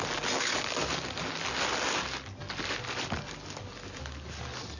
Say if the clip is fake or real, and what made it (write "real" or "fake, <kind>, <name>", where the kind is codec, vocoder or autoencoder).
real